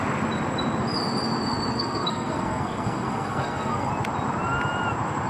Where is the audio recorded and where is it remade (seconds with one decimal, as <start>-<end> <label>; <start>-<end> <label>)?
0.0-1.7 recorded; 1.7-3.9 remade; 3.9-5.3 recorded